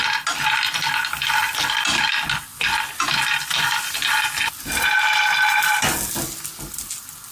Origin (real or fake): real